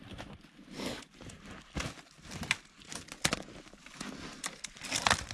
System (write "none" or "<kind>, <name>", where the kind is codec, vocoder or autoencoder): none